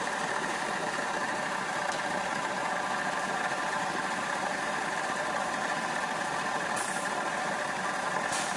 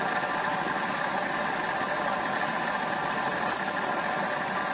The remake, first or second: first